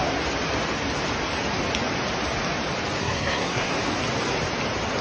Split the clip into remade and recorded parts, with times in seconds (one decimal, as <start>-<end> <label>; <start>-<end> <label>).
0.0-3.0 recorded; 3.0-3.7 remade; 3.7-5.0 recorded